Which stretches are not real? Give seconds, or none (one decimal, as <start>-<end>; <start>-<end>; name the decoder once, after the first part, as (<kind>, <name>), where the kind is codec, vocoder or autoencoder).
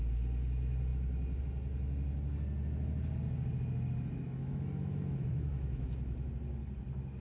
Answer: 4.4-6.3 (autoencoder, DAC-VAE)